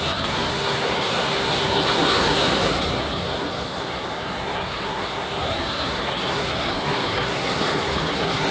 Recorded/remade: remade